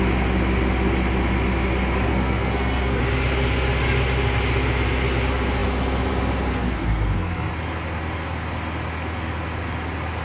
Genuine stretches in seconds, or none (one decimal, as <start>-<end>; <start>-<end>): 0.0-2.1; 3.0-6.5; 7.5-10.2